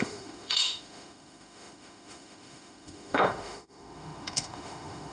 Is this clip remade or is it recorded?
remade